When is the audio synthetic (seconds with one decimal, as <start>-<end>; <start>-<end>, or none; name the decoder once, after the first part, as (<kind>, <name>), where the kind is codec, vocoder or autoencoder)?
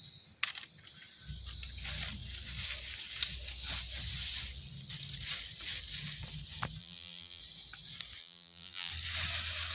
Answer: 6.8-7.4 (vocoder, BigVGAN v2); 8.2-8.9